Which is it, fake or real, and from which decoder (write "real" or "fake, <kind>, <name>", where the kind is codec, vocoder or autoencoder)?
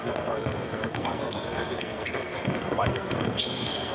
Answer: fake, codec, SNAC